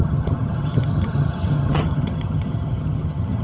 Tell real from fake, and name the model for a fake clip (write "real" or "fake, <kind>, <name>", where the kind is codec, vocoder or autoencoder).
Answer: fake, vocoder, HiFi-GAN